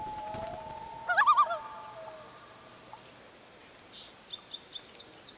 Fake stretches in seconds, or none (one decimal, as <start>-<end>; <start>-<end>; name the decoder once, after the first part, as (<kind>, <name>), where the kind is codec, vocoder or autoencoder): none